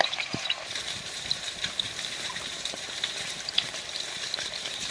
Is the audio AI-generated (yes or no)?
yes